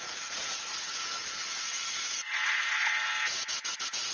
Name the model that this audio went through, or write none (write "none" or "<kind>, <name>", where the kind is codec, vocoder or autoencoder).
vocoder, Vocos